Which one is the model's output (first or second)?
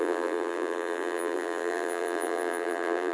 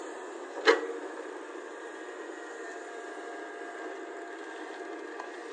first